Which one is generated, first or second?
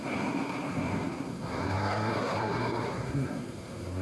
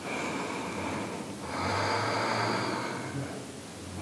first